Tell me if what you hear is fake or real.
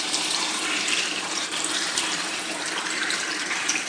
fake